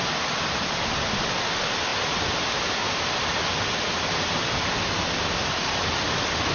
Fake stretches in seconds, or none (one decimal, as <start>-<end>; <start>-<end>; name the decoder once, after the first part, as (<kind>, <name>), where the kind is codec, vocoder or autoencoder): none